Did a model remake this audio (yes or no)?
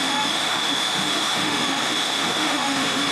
yes